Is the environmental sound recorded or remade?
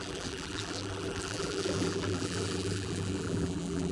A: remade